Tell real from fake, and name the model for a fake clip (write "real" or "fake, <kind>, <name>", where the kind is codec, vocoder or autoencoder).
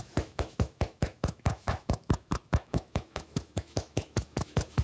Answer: fake, autoencoder, DAC-VAE